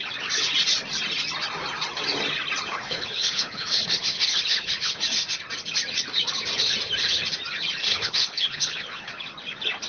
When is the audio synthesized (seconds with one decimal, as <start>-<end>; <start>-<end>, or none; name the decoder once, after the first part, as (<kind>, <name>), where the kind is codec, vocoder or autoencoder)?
2.7-5.0 (codec, HILCodec); 7.8-9.1